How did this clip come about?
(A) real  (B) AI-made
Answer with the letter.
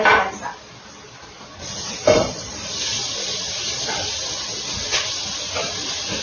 A